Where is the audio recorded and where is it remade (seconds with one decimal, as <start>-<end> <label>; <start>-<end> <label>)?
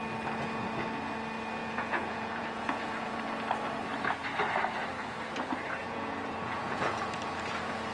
0.0-1.6 recorded; 1.6-3.2 remade; 3.2-5.8 recorded; 5.8-7.0 remade; 7.0-7.9 recorded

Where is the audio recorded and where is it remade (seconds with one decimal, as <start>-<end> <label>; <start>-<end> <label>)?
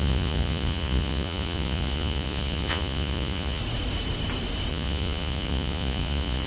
0.0-3.6 remade; 3.6-4.7 recorded; 4.7-6.5 remade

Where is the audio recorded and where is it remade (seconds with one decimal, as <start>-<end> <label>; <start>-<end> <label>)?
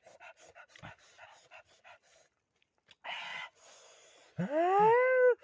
0.0-3.3 recorded; 3.3-4.4 remade; 4.4-5.4 recorded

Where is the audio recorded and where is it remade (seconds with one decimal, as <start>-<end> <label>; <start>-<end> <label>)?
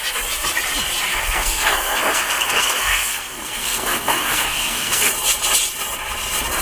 0.0-1.1 recorded; 1.1-5.1 remade; 5.1-6.6 recorded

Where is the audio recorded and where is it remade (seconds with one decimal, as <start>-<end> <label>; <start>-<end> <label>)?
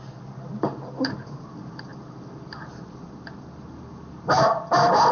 0.0-5.1 recorded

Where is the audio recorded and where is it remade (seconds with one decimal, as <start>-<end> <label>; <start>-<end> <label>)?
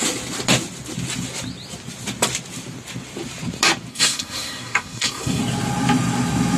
0.0-3.9 recorded; 3.9-5.4 remade; 5.4-6.6 recorded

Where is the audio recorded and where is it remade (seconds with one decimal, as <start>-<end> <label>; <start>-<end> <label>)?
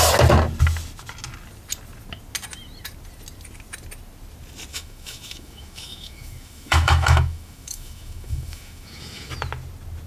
0.0-4.7 recorded; 4.7-9.3 remade; 9.3-10.1 recorded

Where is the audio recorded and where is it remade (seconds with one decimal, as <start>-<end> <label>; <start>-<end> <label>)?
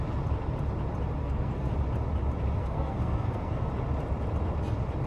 0.0-1.2 recorded; 1.2-1.7 remade; 1.7-2.6 recorded; 2.6-3.7 remade; 3.7-5.1 recorded